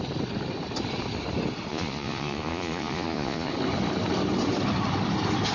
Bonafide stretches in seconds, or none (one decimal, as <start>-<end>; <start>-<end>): 0.0-1.7; 3.5-5.5

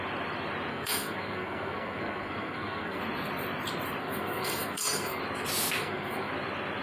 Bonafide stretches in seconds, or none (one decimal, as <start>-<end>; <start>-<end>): 0.0-0.7; 3.0-4.0; 5.2-5.8; 6.3-6.8